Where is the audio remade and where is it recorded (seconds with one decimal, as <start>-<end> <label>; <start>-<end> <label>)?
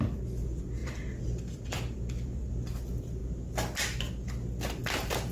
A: 0.0-0.8 recorded; 0.8-2.5 remade; 2.5-5.3 recorded